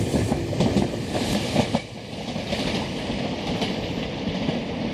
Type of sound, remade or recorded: recorded